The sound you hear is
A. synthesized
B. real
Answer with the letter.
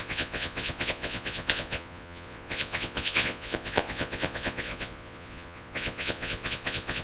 A